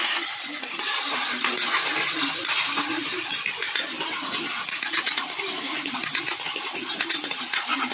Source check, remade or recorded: recorded